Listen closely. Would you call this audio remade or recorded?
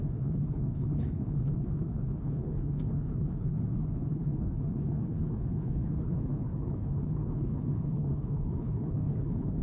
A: remade